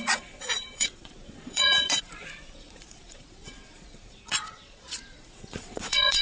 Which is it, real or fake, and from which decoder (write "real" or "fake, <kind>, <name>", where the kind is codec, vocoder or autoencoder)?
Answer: fake, vocoder, Vocos